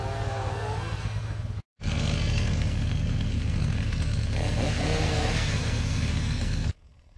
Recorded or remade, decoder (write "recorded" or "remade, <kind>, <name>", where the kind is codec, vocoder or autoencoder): remade, codec, SNAC